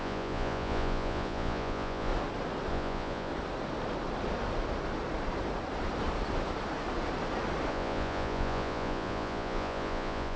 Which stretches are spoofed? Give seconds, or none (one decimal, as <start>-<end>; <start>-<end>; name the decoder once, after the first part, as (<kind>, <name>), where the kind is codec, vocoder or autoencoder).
0.0-2.1 (vocoder, Vocos); 2.7-3.3; 7.7-10.4